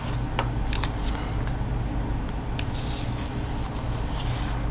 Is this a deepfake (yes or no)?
no